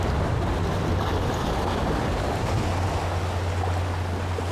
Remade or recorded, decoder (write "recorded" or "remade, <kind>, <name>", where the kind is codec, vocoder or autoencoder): recorded